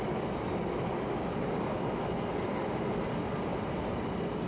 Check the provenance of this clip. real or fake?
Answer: real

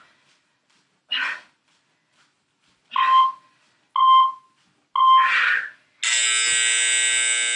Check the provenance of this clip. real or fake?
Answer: real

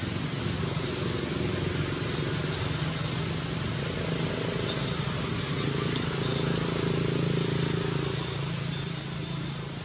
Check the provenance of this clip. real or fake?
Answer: real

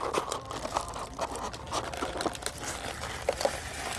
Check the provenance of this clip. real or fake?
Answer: fake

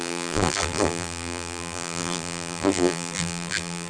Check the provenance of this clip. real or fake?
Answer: fake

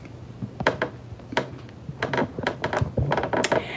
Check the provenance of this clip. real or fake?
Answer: real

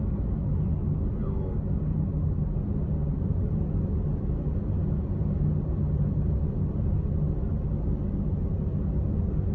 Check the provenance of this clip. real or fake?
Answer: real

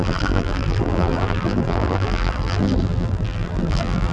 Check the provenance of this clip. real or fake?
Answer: fake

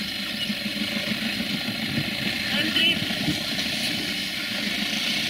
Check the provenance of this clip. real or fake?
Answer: real